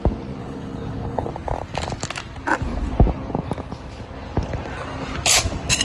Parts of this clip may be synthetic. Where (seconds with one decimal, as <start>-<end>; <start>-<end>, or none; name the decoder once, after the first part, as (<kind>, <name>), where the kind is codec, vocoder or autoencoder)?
0.4-1.3 (codec, HILCodec)